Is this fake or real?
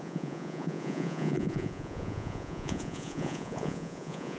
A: fake